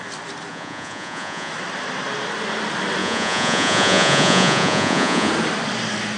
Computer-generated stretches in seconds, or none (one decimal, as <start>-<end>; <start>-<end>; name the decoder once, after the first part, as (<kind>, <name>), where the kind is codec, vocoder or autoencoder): 0.5-1.5 (vocoder, Vocos); 3.0-5.3